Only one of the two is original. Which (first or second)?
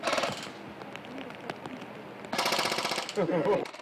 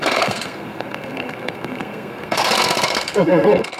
first